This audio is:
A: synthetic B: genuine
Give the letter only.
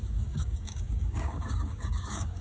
A